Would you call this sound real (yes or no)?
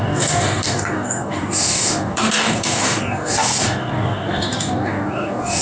no